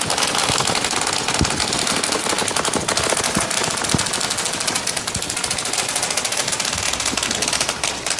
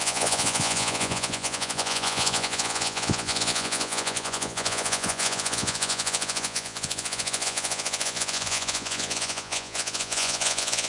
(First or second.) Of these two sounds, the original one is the first